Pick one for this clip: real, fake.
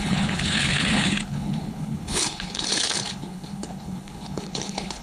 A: fake